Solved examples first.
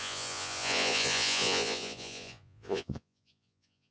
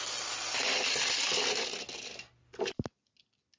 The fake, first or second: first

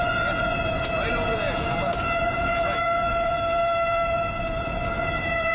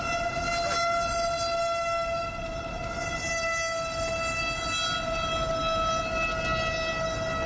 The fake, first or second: first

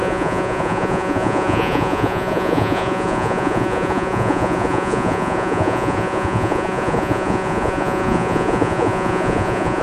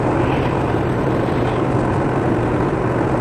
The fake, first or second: first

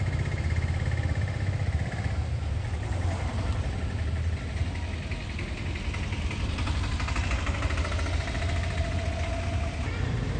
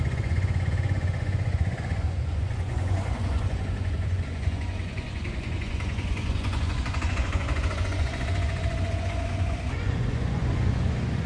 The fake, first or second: second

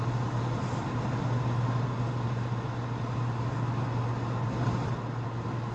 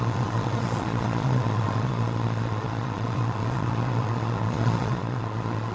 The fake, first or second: second